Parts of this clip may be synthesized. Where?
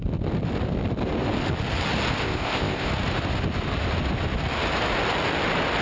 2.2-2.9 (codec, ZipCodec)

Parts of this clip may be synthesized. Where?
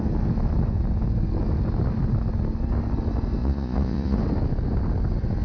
3.4-4.2 (vocoder, Vocos)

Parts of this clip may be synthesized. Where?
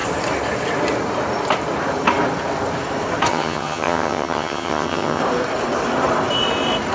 3.3-5.2 (vocoder, HiFi-GAN)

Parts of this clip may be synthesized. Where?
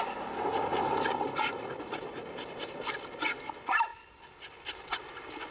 0.7-1.6 (vocoder, BigVGAN v2)